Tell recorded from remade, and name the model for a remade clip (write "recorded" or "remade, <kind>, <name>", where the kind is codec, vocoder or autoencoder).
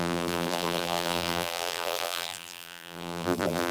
remade, vocoder, BigVGAN v2